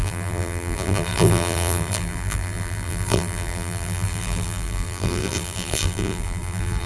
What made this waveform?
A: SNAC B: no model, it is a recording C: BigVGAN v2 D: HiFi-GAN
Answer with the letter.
C